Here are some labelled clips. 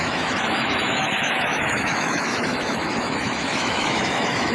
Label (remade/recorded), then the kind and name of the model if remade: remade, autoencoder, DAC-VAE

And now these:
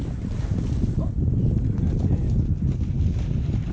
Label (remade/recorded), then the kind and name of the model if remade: recorded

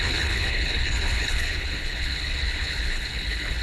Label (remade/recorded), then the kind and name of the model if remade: remade, codec, HILCodec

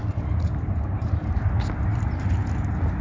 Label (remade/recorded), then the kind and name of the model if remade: recorded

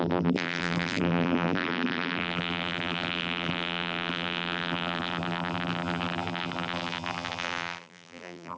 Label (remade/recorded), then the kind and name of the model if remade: remade, vocoder, BigVGAN v2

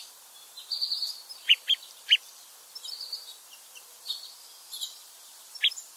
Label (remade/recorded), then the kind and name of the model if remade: remade, vocoder, BigVGAN v2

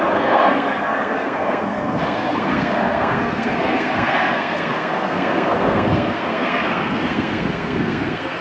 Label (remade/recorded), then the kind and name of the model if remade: remade, codec, SNAC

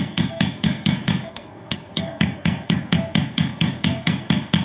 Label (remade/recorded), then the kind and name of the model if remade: remade, codec, SNAC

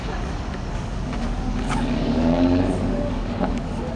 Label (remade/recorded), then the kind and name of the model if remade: remade, codec, DAC